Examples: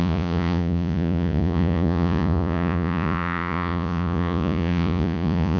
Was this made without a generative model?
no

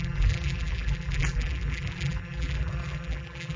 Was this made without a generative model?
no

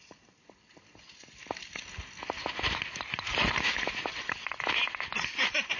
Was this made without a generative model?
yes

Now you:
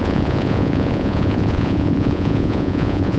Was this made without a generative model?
no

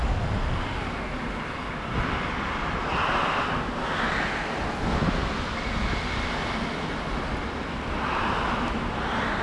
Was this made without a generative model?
yes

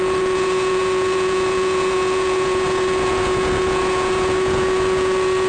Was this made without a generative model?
no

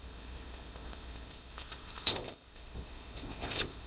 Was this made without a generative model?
no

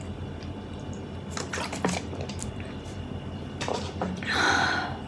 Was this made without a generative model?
yes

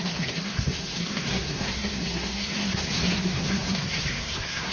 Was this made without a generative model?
no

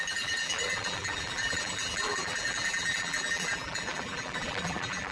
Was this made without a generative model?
no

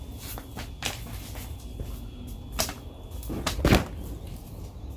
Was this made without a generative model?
yes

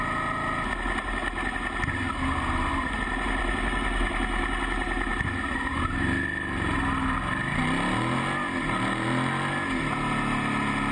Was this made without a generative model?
yes